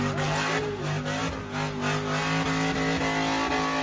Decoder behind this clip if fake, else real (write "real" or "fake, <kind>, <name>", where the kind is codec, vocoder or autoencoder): real